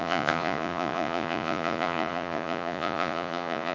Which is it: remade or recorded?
remade